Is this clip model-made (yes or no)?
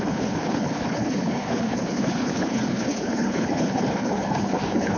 yes